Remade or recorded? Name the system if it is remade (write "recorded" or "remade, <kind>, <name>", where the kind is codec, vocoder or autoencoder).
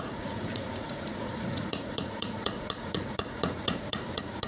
remade, vocoder, Vocos